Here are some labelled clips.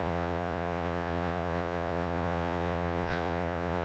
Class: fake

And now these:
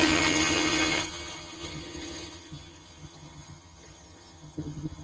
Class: fake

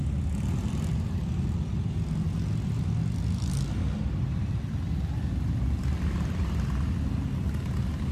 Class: real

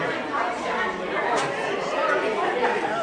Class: real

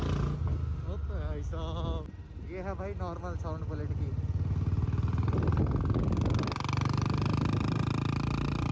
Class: real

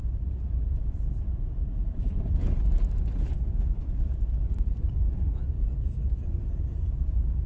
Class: fake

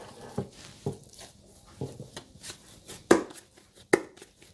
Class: real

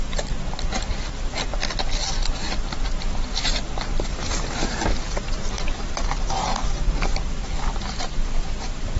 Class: fake